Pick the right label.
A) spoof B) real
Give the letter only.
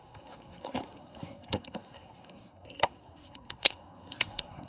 A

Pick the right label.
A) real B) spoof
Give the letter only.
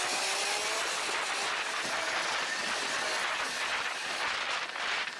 A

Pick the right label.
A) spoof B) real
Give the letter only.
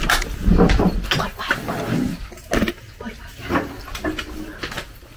B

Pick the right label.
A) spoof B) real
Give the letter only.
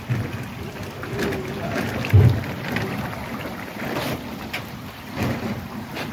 B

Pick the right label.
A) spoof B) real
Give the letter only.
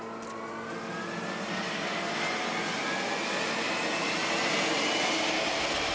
B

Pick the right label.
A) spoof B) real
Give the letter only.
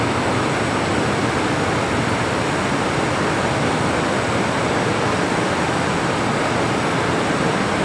B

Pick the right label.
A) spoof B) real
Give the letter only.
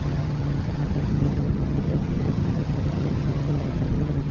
A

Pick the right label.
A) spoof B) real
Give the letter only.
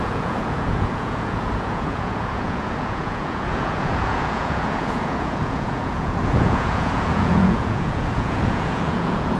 A